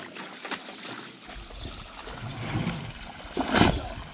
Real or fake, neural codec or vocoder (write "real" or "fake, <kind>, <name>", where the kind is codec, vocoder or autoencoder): real